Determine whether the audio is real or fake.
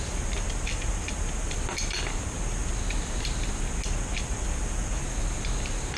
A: real